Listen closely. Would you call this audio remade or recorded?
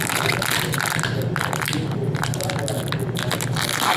recorded